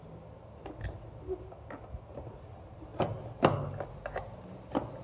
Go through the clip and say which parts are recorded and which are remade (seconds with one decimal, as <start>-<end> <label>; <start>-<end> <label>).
0.0-5.0 recorded